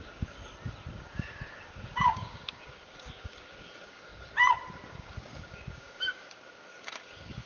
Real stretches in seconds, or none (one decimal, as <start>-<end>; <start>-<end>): 0.4-0.9; 4.1-4.9